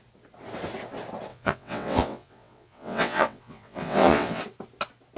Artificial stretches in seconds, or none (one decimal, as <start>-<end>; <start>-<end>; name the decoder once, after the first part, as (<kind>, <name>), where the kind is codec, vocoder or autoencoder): 1.3-4.4 (vocoder, WaveNeXt)